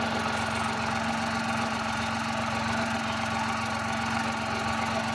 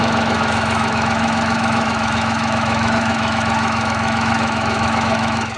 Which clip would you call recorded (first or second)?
first